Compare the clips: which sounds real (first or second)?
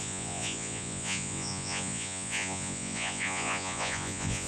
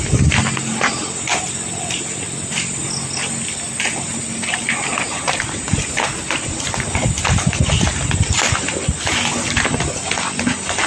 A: second